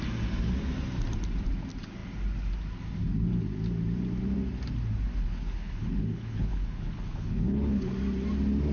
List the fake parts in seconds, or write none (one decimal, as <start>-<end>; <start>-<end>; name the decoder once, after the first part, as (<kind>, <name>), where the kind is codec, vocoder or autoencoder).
5.1-7.9 (codec, HILCodec)